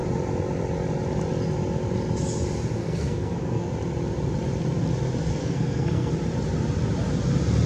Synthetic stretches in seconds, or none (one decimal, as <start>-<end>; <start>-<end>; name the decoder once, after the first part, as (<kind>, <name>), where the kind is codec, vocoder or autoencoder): 2.8-3.7 (codec, SNAC); 5.4-6.1